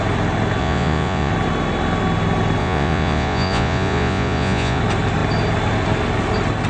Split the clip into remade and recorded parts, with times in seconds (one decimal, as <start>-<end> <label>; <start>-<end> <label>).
0.0-0.6 recorded; 0.6-1.3 remade; 1.3-2.6 recorded; 2.6-4.8 remade; 4.8-6.7 recorded